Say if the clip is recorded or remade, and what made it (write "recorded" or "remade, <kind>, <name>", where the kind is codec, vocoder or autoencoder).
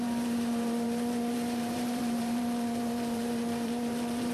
remade, vocoder, BigVGAN v2